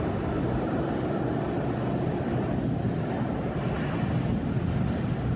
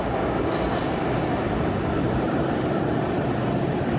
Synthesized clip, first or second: second